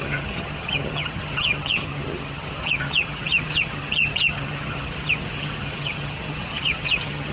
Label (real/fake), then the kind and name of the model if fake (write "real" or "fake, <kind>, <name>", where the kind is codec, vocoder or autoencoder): fake, vocoder, HiFi-GAN